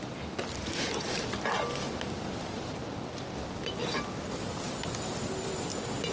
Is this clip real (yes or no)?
yes